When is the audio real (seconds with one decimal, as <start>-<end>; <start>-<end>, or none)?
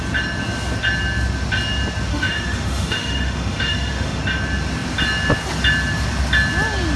0.0-2.1; 4.2-7.0